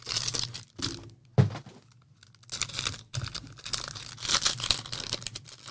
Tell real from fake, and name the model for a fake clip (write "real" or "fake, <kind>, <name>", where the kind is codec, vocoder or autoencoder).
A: real